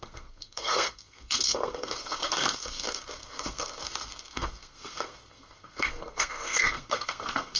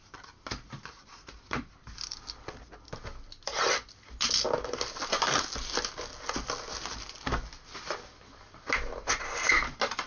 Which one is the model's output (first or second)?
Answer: first